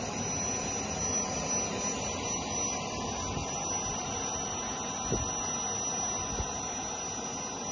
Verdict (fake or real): real